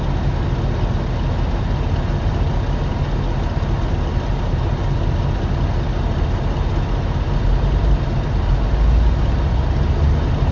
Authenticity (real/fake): real